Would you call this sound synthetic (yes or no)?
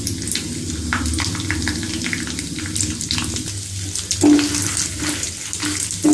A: no